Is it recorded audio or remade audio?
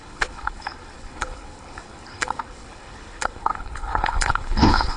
remade